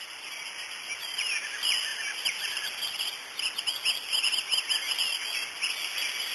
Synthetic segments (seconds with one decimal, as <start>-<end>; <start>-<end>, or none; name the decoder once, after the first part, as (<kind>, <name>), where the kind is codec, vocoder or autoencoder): none